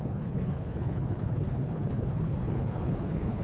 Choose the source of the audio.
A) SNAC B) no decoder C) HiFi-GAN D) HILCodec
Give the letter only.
D